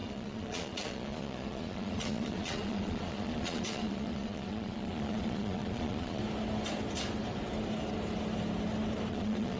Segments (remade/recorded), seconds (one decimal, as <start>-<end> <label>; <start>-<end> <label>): 0.0-6.2 remade; 6.2-9.1 recorded; 9.1-9.6 remade